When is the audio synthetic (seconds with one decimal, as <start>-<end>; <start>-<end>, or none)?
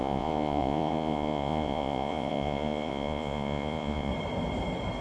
0.0-4.1